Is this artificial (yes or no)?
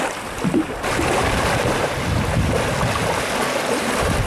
no